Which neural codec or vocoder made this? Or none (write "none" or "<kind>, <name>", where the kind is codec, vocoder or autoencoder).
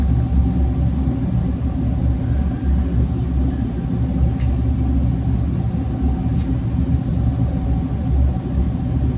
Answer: none